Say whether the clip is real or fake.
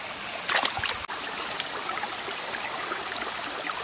real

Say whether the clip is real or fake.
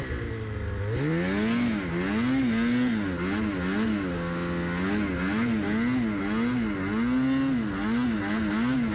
real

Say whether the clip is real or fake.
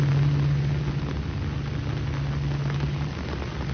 real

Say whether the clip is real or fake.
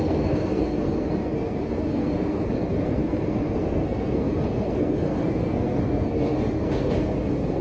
fake